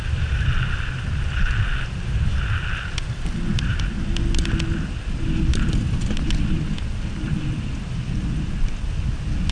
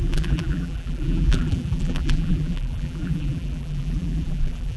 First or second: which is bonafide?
first